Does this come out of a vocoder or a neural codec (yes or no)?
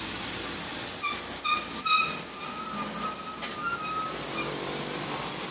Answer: no